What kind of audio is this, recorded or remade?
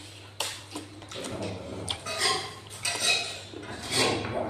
recorded